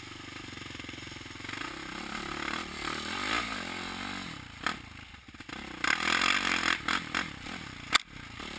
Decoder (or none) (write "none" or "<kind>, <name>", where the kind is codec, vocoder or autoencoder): none